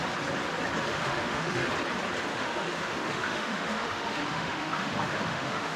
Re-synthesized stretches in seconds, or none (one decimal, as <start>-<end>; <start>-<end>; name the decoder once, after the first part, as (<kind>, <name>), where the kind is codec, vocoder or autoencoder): 0.9-1.7 (autoencoder, DAC-VAE); 2.3-5.8